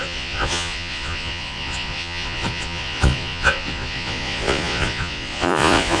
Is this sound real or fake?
fake